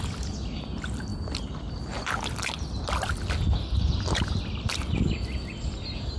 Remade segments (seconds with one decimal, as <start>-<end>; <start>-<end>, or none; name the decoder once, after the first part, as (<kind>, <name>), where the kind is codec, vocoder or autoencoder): none